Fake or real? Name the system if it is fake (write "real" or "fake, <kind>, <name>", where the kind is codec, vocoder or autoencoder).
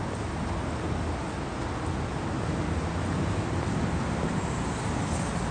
real